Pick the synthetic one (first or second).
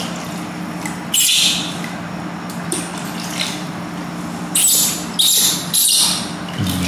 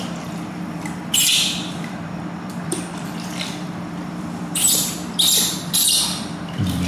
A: second